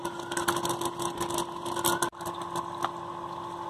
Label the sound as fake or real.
real